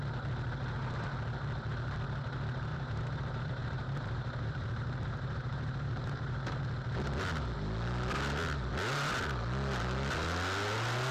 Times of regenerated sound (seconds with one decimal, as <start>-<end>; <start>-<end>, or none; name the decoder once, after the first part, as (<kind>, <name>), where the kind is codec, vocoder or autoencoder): 2.7-6.6 (vocoder, BigVGAN v2)